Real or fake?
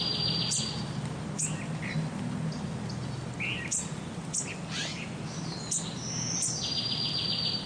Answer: real